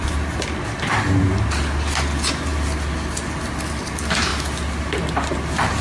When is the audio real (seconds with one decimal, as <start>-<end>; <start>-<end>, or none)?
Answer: 0.0-5.8

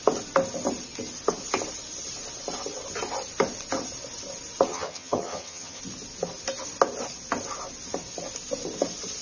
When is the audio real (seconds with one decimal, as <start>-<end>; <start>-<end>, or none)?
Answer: 0.0-4.7; 5.8-9.2

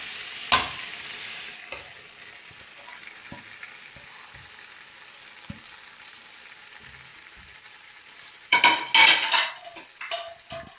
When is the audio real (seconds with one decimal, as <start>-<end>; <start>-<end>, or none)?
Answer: 0.0-7.1; 8.6-10.8

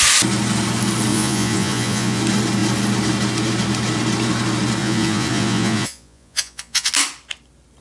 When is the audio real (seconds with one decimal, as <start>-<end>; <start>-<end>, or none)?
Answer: 0.0-1.1; 2.2-4.8; 6.9-7.8

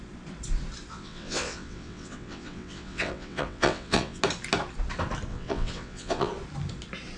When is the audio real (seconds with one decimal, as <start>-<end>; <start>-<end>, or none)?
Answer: 0.0-0.9; 4.2-5.3; 6.3-7.2